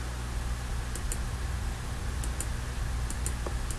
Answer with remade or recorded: recorded